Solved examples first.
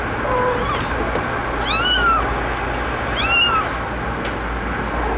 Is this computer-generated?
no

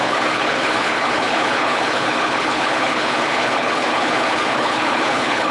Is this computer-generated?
yes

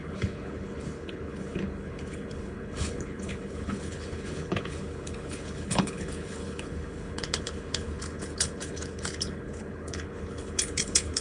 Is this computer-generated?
yes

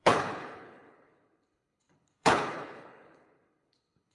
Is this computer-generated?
yes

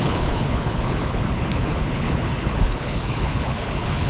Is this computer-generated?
yes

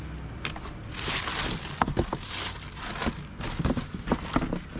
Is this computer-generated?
no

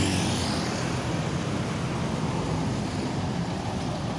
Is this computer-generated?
no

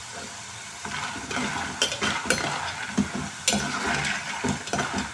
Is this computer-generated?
no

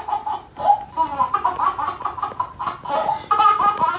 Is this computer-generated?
no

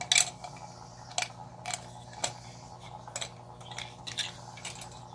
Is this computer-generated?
no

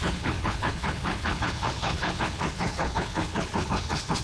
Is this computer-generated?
yes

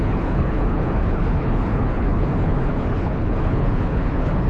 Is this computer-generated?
yes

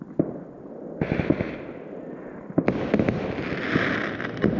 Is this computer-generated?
no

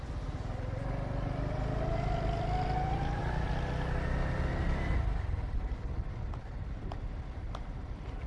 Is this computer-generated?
no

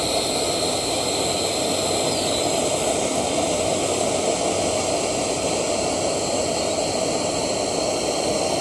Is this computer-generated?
no